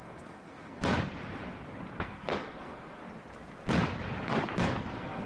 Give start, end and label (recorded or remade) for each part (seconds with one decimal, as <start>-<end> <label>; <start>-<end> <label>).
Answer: 0.0-0.9 remade; 0.9-2.0 recorded; 2.0-3.0 remade; 3.0-4.6 recorded; 4.6-5.3 remade